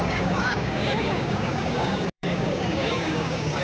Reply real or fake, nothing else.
fake